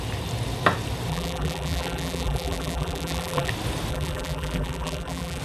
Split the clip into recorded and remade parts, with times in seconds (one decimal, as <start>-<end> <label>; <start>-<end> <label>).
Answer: 0.0-1.1 recorded; 1.1-3.5 remade; 3.5-3.9 recorded; 3.9-5.4 remade